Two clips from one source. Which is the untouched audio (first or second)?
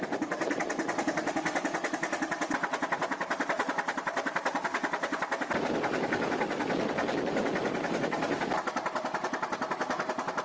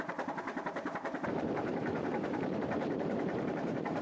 first